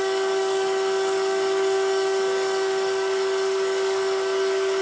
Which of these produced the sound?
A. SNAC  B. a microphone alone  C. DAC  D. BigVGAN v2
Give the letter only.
C